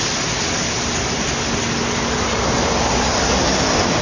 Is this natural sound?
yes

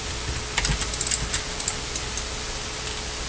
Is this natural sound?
yes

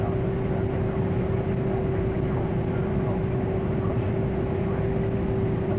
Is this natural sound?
yes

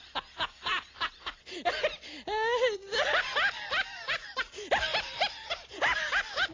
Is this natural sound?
yes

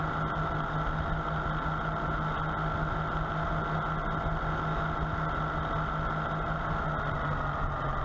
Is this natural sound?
yes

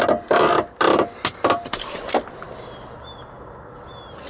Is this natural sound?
yes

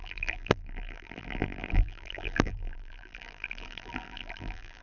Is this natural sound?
no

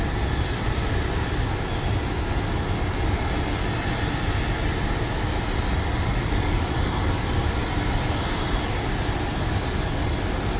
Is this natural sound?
yes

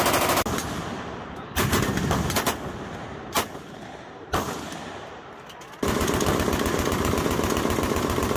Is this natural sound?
yes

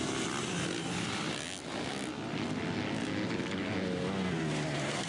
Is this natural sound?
yes